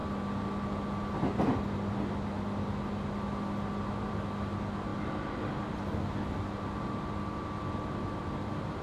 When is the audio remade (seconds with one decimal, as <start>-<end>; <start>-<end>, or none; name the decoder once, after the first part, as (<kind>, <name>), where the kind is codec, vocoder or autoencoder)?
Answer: none